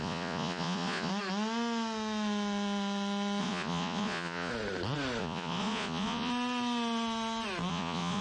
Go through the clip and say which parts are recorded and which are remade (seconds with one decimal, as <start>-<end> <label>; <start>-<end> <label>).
0.0-1.1 remade; 1.1-3.4 recorded; 3.4-4.5 remade; 4.5-5.2 recorded; 5.2-6.3 remade; 6.3-7.7 recorded; 7.7-8.2 remade